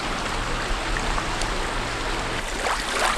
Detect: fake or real real